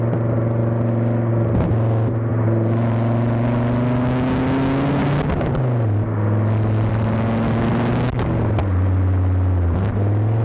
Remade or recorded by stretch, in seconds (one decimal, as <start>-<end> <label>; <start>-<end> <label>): 0.0-10.4 recorded